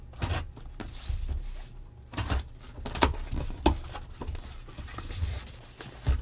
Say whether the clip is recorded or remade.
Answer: recorded